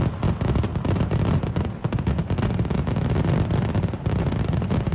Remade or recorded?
recorded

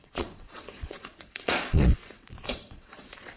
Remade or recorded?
remade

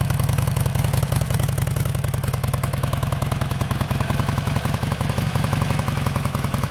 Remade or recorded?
remade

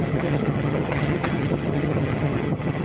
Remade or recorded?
remade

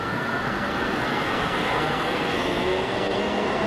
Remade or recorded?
remade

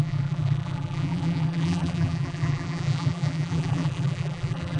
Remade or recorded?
remade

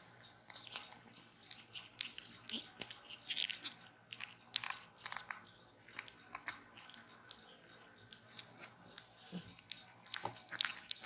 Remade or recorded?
recorded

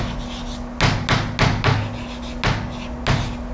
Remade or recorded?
recorded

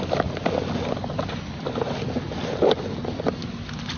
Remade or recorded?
recorded